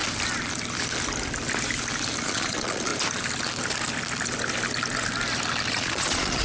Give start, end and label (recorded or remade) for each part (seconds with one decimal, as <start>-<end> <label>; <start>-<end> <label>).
0.0-2.2 recorded; 2.2-2.9 remade; 2.9-5.7 recorded; 5.7-6.4 remade